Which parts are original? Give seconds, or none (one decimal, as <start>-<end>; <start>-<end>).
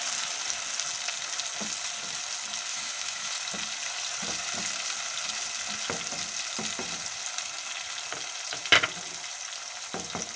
0.0-2.7; 3.3-10.4